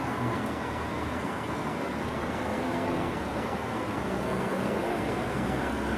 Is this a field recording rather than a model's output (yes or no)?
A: no